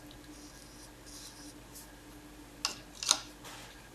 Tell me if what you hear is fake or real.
real